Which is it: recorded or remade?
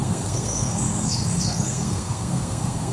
remade